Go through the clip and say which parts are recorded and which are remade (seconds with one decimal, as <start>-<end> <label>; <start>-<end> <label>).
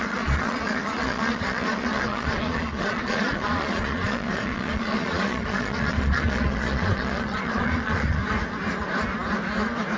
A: 0.0-8.2 remade; 8.2-10.0 recorded